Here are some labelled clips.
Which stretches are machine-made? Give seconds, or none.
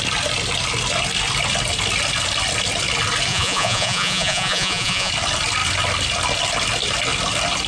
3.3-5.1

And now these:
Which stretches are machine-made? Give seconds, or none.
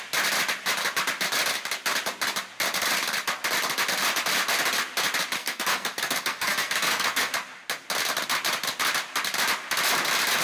5.4-7.3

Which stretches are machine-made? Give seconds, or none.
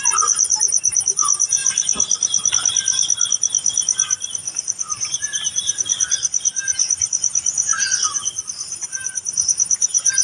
none